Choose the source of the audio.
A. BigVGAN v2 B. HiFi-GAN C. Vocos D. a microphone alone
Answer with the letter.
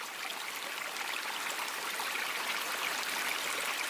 A